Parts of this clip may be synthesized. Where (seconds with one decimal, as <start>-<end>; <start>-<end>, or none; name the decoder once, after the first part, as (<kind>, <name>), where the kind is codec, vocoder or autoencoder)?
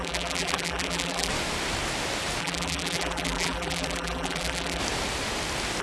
0.0-1.3 (vocoder, BigVGAN v2); 2.4-4.8